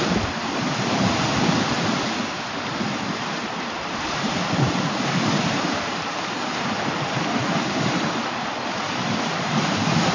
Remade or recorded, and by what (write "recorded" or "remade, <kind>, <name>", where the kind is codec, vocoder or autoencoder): remade, vocoder, BigVGAN v2